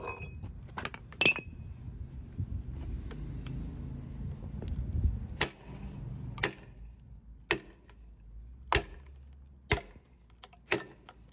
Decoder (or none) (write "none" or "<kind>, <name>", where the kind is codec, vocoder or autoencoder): none